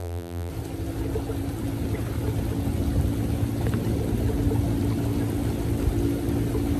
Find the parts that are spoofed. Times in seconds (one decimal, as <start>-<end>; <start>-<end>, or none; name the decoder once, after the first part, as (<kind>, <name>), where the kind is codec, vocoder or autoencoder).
0.0-0.5 (vocoder, BigVGAN v2)